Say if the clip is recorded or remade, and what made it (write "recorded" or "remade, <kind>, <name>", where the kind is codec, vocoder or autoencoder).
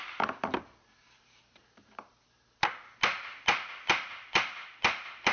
recorded